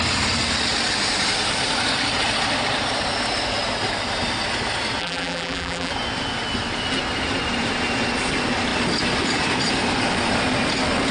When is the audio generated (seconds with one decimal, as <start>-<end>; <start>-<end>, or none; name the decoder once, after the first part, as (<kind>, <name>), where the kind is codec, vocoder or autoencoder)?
5.0-5.9 (vocoder, BigVGAN v2)